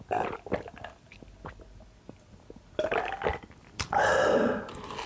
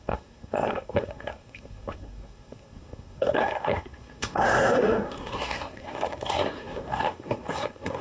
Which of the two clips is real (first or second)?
first